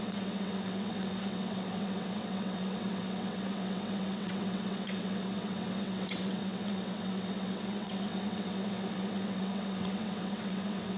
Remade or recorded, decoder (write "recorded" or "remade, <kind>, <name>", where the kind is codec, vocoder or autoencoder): remade, vocoder, WaveNeXt